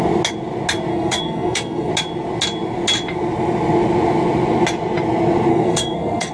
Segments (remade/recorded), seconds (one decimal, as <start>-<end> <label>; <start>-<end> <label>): 0.0-0.9 recorded; 0.9-1.9 remade; 1.9-5.5 recorded; 5.5-6.3 remade